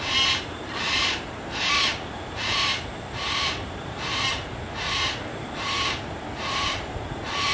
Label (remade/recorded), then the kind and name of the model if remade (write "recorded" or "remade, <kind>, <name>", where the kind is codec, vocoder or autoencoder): remade, vocoder, BigVGAN v2